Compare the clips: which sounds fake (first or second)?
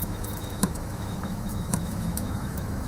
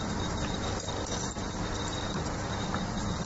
first